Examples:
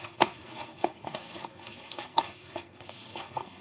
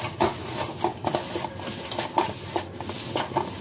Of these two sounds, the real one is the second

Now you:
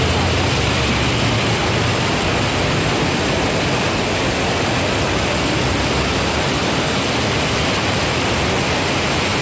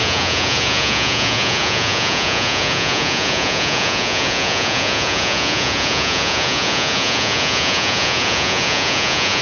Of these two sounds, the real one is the first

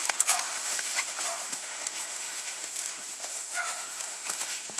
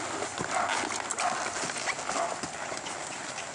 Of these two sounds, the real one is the second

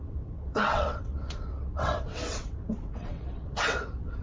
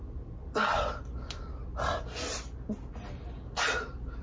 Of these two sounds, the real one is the second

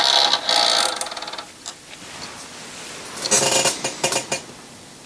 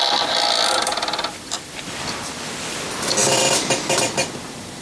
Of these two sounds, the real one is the first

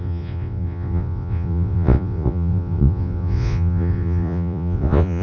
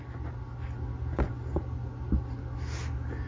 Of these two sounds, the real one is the second